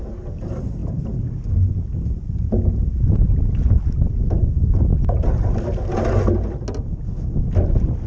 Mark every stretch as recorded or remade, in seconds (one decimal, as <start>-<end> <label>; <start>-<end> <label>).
0.0-8.1 recorded